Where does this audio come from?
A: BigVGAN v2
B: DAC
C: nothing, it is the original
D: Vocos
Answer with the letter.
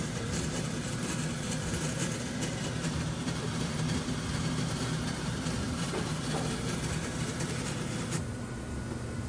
A